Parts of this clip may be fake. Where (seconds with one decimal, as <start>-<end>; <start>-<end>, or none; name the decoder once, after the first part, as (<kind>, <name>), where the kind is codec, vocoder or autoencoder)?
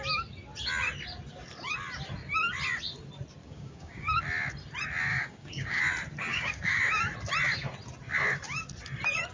3.4-4.2 (codec, DAC); 5.1-5.8; 6.3-6.8